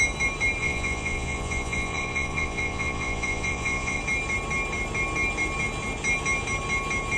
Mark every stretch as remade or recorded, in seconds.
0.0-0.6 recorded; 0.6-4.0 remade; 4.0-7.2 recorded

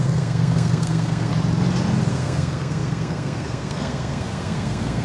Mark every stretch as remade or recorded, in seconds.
0.0-1.3 remade; 1.3-2.1 recorded; 2.1-5.0 remade

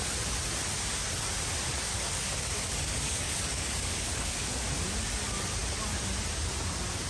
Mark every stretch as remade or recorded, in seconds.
0.0-1.9 recorded; 1.9-4.7 remade; 4.7-7.1 recorded

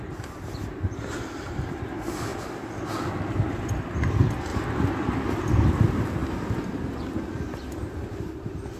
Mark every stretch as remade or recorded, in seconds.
0.0-8.8 recorded